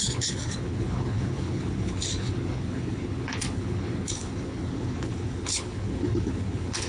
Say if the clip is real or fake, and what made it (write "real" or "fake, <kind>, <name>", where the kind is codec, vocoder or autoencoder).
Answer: fake, codec, HILCodec